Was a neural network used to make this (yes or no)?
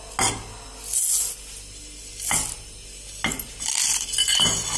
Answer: no